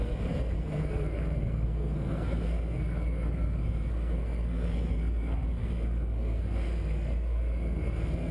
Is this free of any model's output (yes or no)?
no